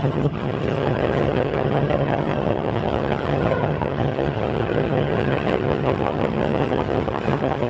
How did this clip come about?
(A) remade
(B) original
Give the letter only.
A